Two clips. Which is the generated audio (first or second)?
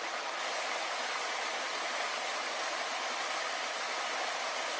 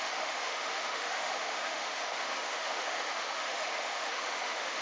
second